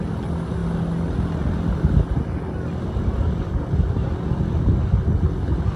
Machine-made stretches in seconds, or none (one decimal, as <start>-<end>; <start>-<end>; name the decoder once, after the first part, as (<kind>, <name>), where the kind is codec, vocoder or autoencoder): none